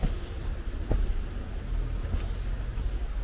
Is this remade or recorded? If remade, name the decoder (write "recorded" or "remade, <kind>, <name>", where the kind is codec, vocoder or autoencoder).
recorded